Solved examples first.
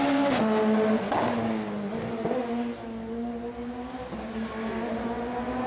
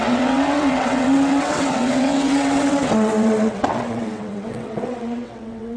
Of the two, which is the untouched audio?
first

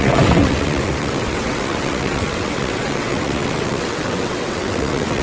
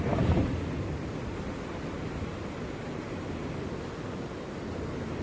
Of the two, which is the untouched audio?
second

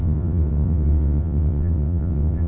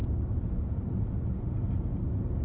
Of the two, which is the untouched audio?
second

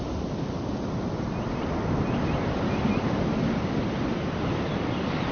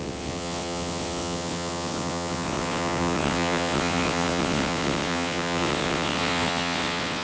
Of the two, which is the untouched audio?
first